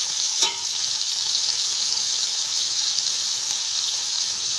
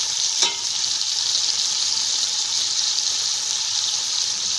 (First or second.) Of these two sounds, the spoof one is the first